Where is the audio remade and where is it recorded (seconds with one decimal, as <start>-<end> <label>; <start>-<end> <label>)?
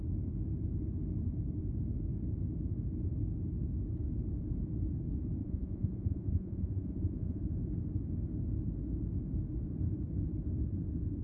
0.0-5.4 recorded; 5.4-7.4 remade; 7.4-11.2 recorded